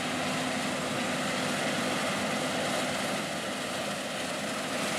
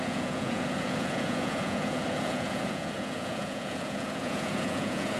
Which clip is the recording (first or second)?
first